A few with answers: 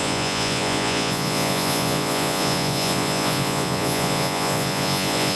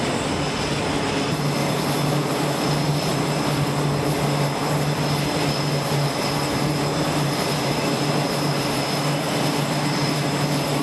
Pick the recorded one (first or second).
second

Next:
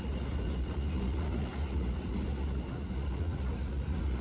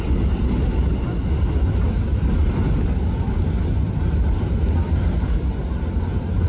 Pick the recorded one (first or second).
second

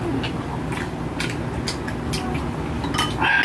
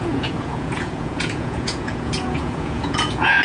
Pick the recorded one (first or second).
first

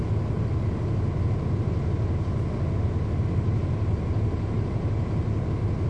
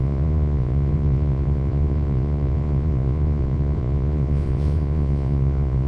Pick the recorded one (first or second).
first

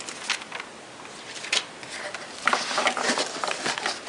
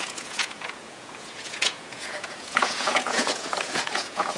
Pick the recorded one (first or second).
first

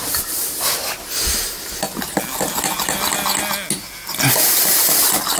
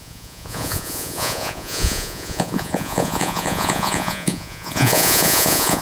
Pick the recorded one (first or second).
first